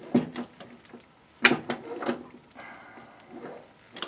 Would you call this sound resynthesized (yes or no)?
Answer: no